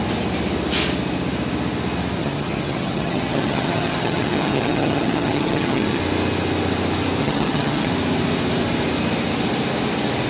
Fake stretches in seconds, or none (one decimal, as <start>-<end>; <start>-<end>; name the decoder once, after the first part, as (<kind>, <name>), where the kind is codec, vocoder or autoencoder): 2.2-6.0 (vocoder, HiFi-GAN); 7.2-7.9